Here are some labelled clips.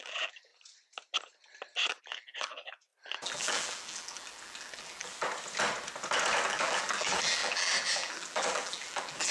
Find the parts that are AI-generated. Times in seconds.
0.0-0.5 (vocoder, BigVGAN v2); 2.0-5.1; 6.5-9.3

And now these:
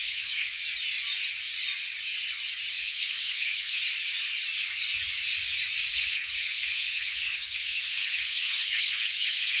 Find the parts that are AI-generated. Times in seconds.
0.0-0.6 (codec, HILCodec); 2.7-3.8; 5.9-9.6

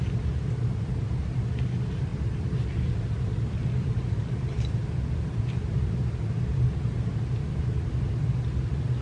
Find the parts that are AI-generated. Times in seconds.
2.1-6.8 (vocoder, BigVGAN v2)

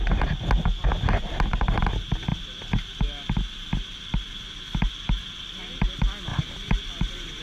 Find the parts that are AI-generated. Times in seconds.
none

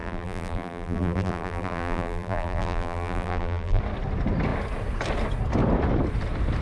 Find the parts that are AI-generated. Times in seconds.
0.0-3.8 (vocoder, BigVGAN v2)

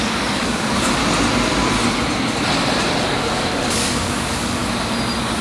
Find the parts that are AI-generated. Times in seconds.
0.0-1.0 (codec, DAC); 3.0-4.6

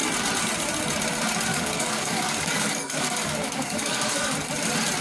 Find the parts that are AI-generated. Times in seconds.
1.5-4.5 (codec, DAC)

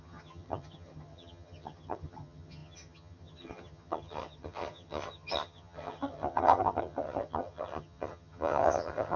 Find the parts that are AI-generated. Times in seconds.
0.0-9.2 (vocoder, HiFi-GAN)